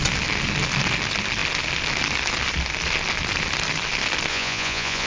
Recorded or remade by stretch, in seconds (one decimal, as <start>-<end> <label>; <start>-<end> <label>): 0.0-4.3 recorded; 4.3-5.1 remade